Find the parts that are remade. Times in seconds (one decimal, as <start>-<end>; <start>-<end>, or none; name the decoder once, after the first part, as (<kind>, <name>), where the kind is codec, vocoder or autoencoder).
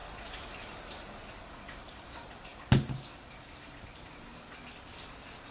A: 0.0-4.3 (vocoder, BigVGAN v2)